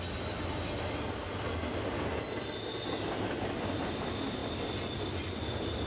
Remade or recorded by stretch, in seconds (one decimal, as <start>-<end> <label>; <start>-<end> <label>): 0.0-5.9 recorded